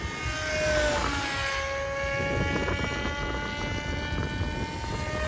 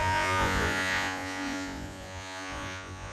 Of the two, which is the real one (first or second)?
first